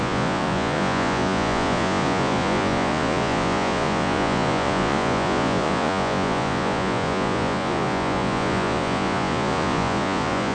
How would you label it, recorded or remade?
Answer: remade